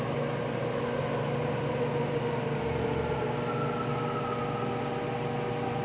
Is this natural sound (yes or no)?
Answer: yes